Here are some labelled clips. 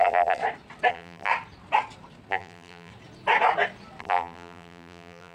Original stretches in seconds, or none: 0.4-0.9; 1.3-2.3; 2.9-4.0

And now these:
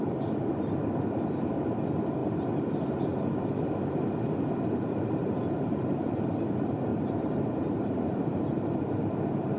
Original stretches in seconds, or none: 0.0-6.9; 9.2-9.6